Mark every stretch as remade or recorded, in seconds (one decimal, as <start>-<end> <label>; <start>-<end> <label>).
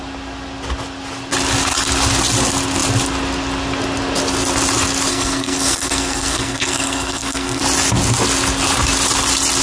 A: 0.0-5.1 recorded; 5.1-7.6 remade; 7.6-9.6 recorded